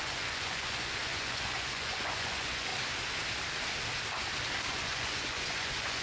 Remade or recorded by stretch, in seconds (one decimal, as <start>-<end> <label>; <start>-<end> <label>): 0.0-2.7 remade; 2.7-4.7 recorded; 4.7-6.0 remade